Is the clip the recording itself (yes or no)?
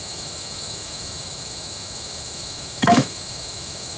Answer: no